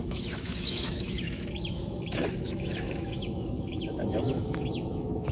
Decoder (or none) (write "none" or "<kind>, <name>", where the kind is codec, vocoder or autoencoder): autoencoder, DAC-VAE